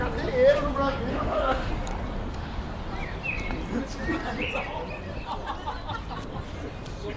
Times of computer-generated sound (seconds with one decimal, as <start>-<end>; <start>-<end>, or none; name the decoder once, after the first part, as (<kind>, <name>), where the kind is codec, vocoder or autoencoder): 1.1-1.7 (autoencoder, DAC-VAE); 2.2-2.7